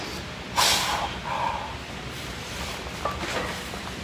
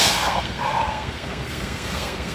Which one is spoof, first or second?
second